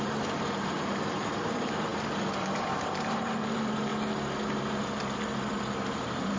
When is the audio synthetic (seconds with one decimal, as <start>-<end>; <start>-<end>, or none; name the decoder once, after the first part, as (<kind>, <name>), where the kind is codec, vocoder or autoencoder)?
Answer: 0.0-1.9 (vocoder, BigVGAN v2); 2.4-3.9; 6.0-6.4